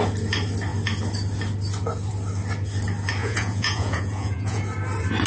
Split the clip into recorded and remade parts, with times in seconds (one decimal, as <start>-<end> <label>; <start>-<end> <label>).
0.0-3.2 recorded; 3.2-4.6 remade; 4.6-5.3 recorded